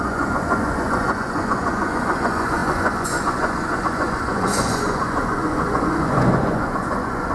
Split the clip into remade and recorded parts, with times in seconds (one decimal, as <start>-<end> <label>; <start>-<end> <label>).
0.0-7.3 remade